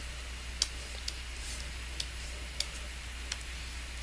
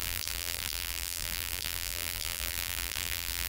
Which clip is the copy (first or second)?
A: second